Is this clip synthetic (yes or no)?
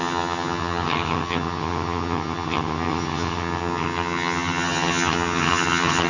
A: yes